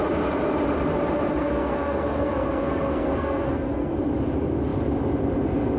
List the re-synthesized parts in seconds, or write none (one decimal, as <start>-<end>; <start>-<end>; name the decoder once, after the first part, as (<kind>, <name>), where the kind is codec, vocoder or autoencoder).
1.4-3.9 (codec, SNAC)